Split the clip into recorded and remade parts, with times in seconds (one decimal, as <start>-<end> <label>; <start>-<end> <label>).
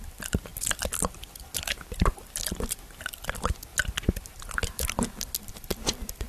0.0-6.3 recorded